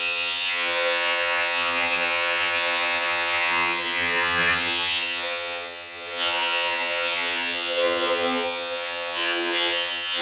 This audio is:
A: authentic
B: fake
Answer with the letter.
B